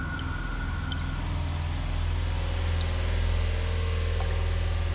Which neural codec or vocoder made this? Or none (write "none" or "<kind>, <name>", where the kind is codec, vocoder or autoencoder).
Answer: none